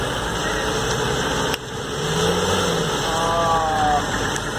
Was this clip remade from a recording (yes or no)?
no